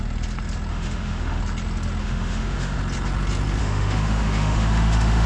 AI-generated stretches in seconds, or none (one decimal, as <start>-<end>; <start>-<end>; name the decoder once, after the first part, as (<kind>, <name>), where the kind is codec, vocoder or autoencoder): 0.7-1.4 (autoencoder, DAC-VAE); 2.0-2.8; 3.6-5.3